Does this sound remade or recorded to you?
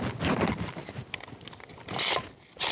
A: recorded